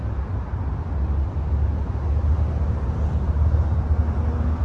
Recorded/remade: recorded